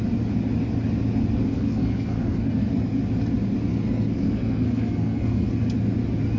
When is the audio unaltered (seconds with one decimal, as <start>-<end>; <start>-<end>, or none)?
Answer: 0.0-1.5; 3.0-3.7; 5.5-6.4